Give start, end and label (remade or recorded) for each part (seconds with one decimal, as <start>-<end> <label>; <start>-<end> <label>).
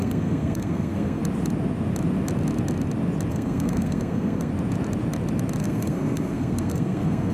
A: 0.0-1.2 remade; 1.2-3.3 recorded; 3.3-4.5 remade; 4.5-5.6 recorded; 5.6-7.3 remade